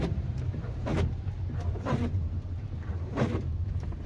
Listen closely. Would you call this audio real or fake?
fake